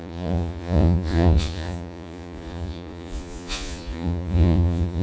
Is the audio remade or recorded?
remade